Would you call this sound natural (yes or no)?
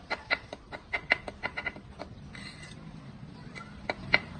yes